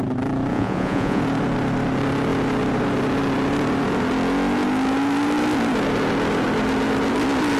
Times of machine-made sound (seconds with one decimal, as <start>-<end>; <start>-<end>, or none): 0.5-1.2